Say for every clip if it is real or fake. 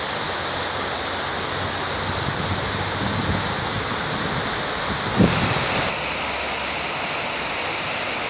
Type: real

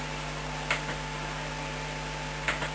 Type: real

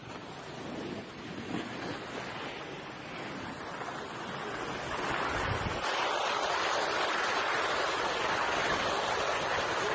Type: real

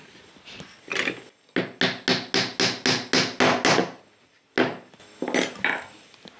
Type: real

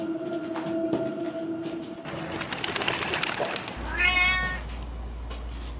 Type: real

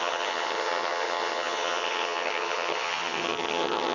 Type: fake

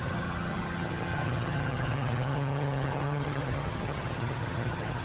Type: fake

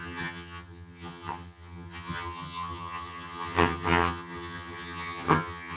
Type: fake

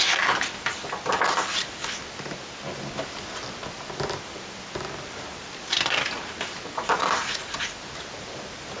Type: real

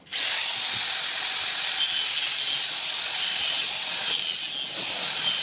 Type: real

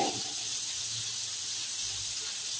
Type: real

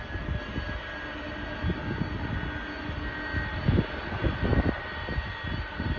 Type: real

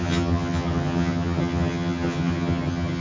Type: fake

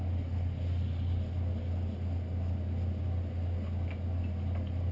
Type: real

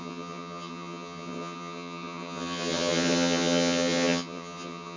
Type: fake